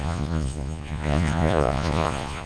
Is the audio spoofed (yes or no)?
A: yes